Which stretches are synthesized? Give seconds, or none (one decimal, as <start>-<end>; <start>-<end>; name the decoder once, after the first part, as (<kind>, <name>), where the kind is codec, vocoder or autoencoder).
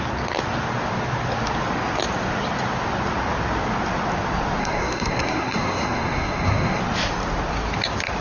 4.6-6.8 (codec, SNAC)